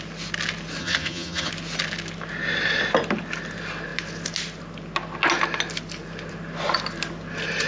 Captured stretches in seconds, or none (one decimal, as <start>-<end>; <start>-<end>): 0.0-0.8; 1.5-7.7